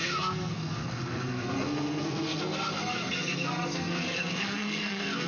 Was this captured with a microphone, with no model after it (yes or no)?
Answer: no